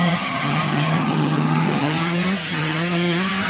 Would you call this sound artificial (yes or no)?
yes